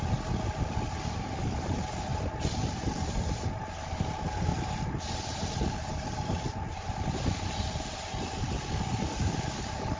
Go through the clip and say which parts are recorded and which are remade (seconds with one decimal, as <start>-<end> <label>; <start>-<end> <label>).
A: 0.0-2.1 recorded; 2.1-3.9 remade; 3.9-4.5 recorded; 4.5-7.7 remade; 7.7-10.0 recorded